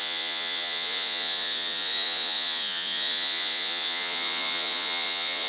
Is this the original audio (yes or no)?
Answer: no